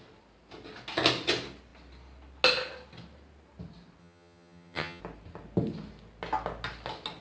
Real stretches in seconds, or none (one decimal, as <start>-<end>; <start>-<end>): 0.0-4.0; 5.0-7.2